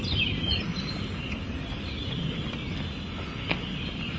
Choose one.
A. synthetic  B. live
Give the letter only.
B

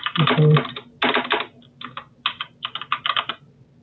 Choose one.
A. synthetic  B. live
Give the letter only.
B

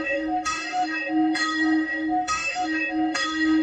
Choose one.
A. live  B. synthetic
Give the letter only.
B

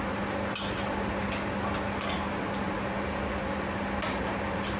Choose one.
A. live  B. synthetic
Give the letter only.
A